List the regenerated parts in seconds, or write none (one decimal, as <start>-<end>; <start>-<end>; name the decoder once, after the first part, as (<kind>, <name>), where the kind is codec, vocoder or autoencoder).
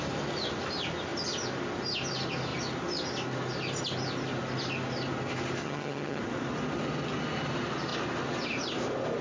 5.6-6.2 (vocoder, HiFi-GAN)